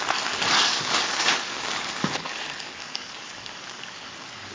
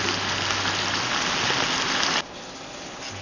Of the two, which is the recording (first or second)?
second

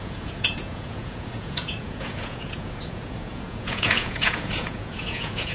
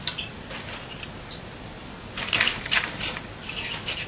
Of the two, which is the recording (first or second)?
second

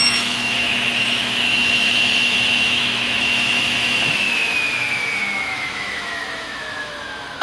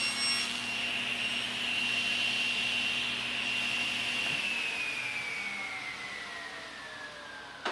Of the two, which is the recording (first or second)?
second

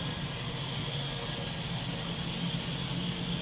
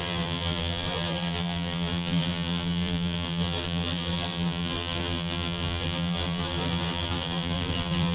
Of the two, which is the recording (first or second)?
first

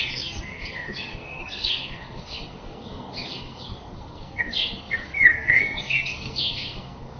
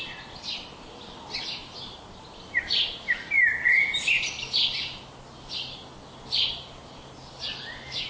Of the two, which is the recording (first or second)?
second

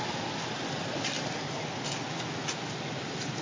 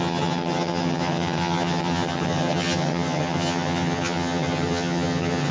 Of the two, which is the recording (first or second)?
first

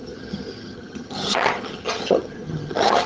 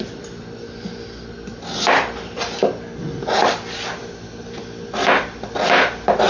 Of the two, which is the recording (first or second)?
second